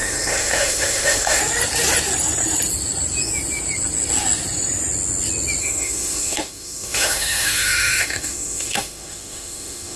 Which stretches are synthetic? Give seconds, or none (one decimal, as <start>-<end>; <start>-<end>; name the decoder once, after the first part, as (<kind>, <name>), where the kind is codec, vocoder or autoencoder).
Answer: 0.0-1.4 (autoencoder, DAC-VAE); 5.6-10.0